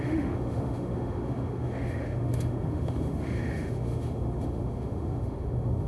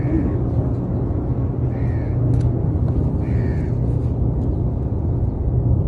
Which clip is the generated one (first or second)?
first